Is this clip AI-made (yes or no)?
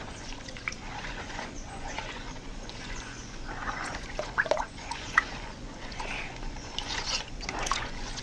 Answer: yes